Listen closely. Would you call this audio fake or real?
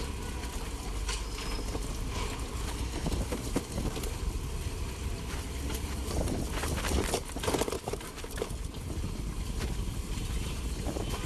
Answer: real